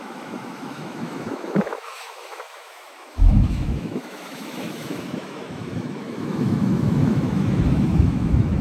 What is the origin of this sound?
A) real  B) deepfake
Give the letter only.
B